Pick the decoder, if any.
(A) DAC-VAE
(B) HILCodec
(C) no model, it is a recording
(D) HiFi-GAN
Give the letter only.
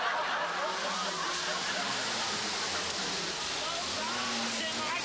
C